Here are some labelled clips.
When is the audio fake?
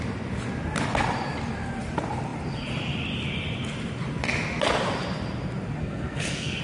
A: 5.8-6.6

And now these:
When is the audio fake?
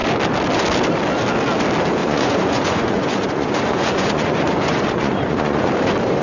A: 2.0-5.7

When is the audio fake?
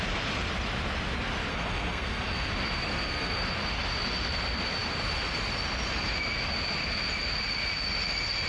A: 1.5-2.5; 2.9-3.4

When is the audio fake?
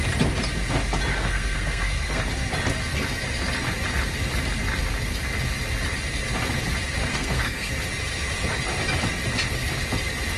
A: 1.1-2.2; 7.1-7.7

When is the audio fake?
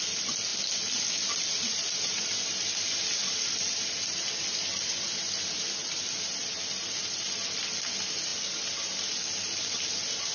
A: 0.5-5.5; 6.4-7.0; 8.3-9.4